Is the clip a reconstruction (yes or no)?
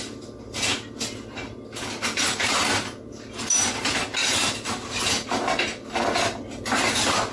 no